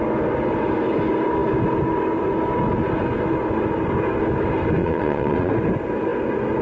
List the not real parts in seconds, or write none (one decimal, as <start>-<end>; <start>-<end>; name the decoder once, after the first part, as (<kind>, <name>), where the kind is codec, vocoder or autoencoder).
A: 4.8-5.5 (vocoder, Vocos)